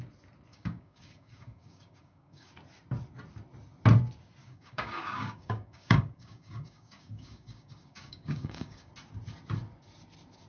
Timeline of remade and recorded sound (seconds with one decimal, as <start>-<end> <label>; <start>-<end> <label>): 0.0-0.5 recorded; 0.5-2.5 remade; 2.5-4.4 recorded; 4.4-8.9 remade; 8.9-10.5 recorded

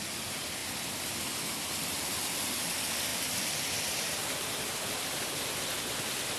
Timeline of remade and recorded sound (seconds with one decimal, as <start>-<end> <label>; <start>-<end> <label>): 0.0-3.1 recorded; 3.1-5.5 remade; 5.5-6.4 recorded